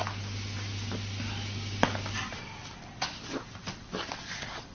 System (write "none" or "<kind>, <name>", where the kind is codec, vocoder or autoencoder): none